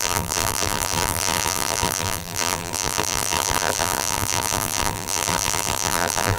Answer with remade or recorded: remade